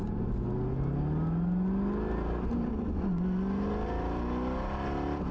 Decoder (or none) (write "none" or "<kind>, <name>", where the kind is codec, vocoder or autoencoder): none